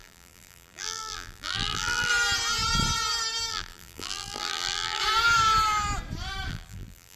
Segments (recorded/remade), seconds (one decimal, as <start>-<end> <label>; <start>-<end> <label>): 0.0-2.1 remade; 2.1-3.5 recorded; 3.5-5.0 remade; 5.0-6.5 recorded; 6.5-7.2 remade